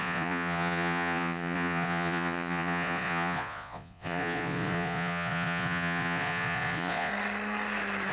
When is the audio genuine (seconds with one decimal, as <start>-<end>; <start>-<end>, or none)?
7.1-8.1